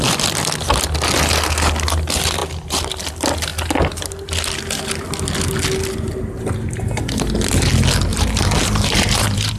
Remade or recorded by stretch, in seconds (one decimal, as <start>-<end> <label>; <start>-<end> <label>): 0.0-8.1 recorded; 8.1-9.6 remade